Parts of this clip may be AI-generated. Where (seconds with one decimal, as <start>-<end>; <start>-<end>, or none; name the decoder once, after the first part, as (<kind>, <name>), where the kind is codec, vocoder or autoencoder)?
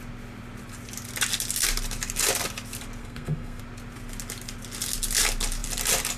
3.0-3.6 (codec, SNAC)